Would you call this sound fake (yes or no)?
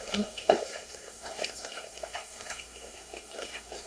yes